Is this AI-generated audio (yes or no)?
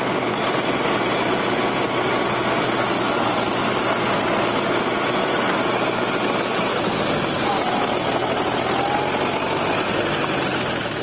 no